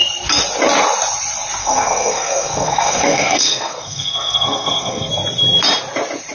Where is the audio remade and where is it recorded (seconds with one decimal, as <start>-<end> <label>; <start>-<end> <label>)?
0.0-1.6 recorded; 1.6-5.1 remade; 5.1-6.3 recorded